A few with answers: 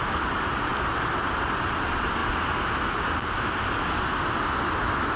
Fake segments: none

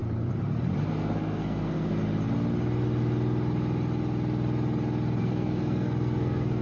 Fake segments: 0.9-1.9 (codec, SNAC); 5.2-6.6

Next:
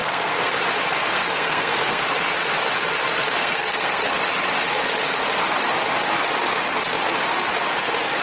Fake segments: 0.0-0.5 (codec, SNAC); 1.1-2.0; 3.4-4.2